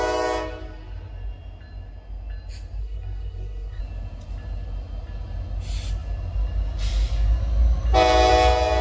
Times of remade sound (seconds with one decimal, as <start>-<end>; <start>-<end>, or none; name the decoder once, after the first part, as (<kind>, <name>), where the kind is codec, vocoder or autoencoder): 2.8-3.8 (codec, SNAC)